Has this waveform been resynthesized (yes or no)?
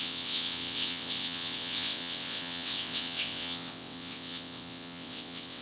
yes